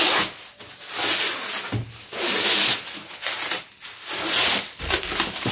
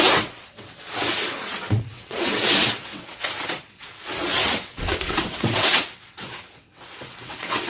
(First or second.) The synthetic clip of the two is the second